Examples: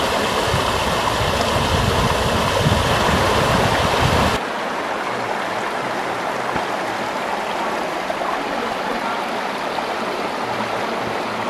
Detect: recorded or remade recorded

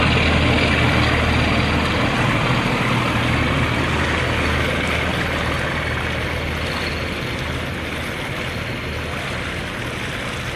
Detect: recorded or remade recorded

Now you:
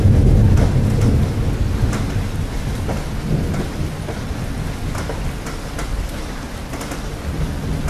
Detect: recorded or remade recorded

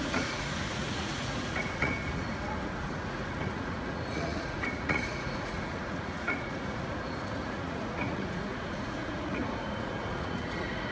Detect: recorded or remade remade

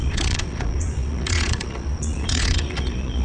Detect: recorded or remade remade